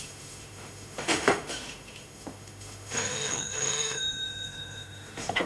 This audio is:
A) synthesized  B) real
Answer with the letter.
A